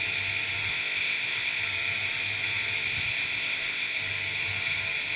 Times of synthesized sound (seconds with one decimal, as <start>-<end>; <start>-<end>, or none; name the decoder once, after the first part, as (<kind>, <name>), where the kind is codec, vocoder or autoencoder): 0.7-1.6 (codec, ZipCodec); 2.9-4.0